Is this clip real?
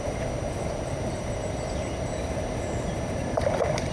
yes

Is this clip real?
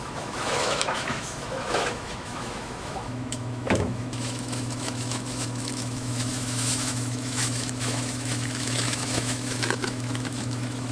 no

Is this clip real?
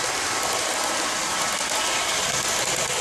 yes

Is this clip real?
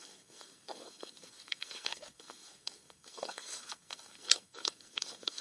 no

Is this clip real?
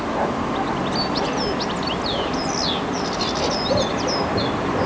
yes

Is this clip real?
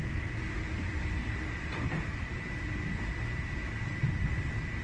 no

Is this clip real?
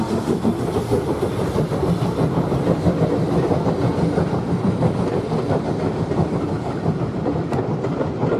yes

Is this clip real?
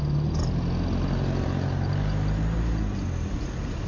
yes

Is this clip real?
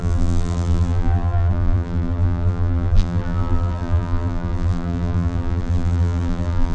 no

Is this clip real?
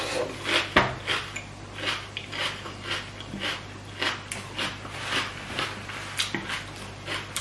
yes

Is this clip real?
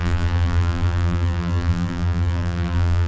no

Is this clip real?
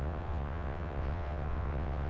no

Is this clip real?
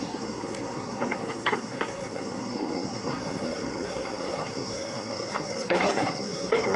no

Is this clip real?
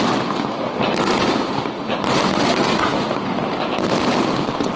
yes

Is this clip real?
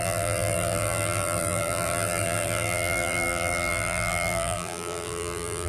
no